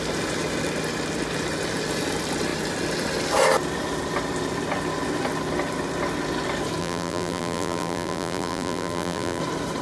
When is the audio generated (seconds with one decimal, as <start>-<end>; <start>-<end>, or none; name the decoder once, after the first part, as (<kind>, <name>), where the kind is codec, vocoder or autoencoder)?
6.8-9.4 (vocoder, BigVGAN v2)